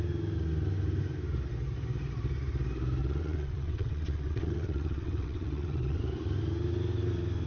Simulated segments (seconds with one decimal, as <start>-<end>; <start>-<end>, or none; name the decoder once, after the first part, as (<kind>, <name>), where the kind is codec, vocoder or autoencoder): 3.0-6.0 (vocoder, WaveNeXt)